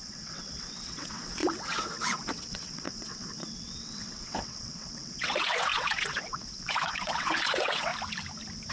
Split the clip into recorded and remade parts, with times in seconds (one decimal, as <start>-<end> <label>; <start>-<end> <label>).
0.0-7.9 remade; 7.9-8.7 recorded